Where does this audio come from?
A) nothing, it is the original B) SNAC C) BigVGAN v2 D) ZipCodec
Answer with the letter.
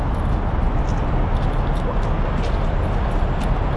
A